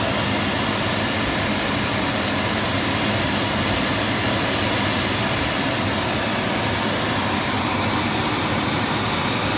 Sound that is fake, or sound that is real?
real